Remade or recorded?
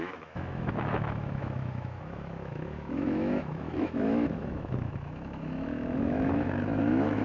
remade